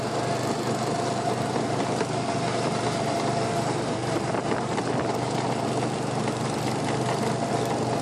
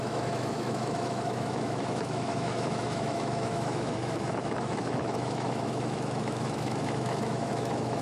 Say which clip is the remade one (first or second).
second